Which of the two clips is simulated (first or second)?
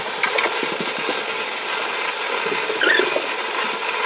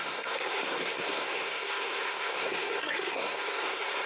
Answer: second